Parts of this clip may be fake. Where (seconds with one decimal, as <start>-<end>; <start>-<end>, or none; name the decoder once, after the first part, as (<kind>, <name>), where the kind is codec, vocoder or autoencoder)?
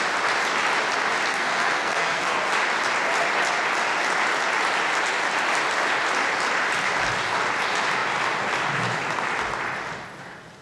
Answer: 1.3-2.5 (codec, SNAC)